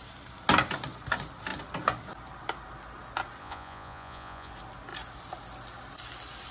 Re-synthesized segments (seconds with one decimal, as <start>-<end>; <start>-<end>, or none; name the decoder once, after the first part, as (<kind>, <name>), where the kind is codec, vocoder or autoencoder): 3.4-4.5 (vocoder, Vocos)